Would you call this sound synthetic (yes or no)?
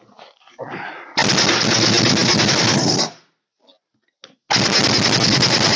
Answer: no